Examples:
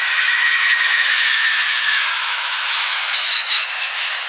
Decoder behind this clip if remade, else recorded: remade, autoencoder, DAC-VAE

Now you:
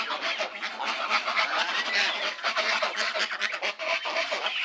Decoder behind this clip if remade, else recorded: recorded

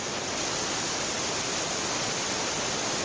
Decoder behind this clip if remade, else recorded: recorded